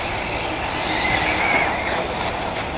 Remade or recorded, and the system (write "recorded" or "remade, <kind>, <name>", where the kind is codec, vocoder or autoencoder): recorded